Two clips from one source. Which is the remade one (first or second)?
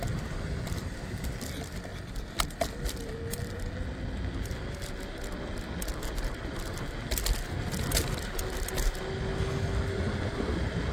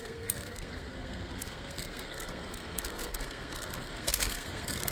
second